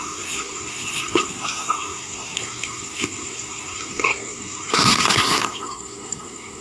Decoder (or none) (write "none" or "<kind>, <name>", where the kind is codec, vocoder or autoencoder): codec, SNAC